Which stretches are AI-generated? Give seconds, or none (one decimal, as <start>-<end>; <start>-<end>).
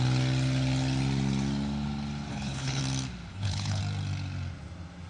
2.3-2.8; 3.3-3.8